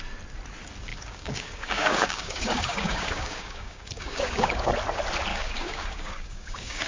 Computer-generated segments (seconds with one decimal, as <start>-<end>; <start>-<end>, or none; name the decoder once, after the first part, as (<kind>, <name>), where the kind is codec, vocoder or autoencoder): 0.9-4.7 (codec, DAC); 5.3-6.9